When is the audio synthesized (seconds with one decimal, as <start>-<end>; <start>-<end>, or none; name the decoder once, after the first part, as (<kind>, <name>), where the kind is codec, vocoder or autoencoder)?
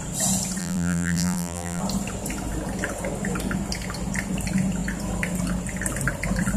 0.6-1.8 (vocoder, BigVGAN v2)